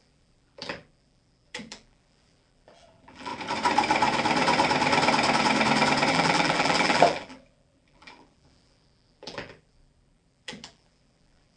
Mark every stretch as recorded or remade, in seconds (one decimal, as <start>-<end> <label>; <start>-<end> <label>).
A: 0.0-3.3 remade; 3.3-6.1 recorded; 6.1-11.6 remade